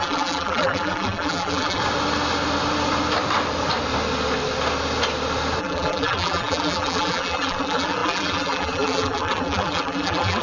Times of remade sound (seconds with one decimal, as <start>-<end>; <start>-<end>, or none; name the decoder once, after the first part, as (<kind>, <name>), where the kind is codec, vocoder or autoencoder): 0.0-1.8 (vocoder, BigVGAN v2); 5.6-10.4